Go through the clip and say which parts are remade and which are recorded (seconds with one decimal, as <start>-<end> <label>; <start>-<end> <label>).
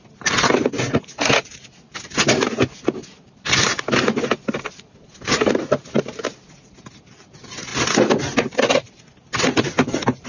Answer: 0.0-10.3 recorded